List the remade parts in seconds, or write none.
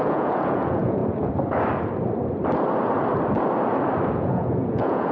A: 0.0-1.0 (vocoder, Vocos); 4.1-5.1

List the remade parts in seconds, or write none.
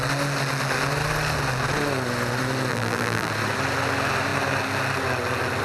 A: 2.7-3.3 (vocoder, BigVGAN v2)